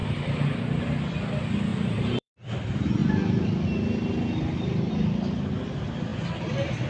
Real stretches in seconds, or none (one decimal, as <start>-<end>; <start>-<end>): 0.0-1.7; 2.3-6.9